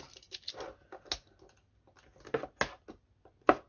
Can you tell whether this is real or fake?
real